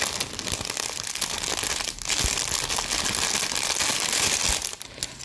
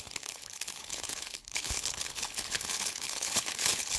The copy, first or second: second